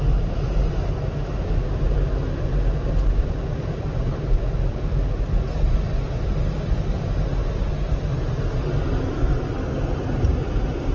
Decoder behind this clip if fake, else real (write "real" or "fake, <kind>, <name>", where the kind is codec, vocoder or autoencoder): real